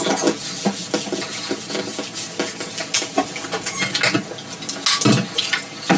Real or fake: real